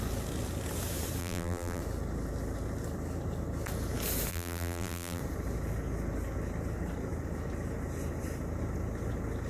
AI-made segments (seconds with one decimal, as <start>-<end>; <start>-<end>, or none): 1.2-1.8; 4.3-5.2